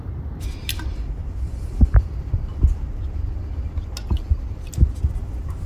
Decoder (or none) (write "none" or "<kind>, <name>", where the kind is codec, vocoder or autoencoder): none